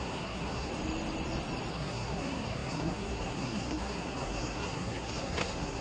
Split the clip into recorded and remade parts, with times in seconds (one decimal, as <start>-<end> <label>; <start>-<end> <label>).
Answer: 0.0-0.7 remade; 0.7-1.7 recorded; 1.7-5.8 remade